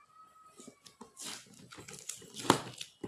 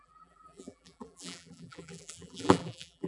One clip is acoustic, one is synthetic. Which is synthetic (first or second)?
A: second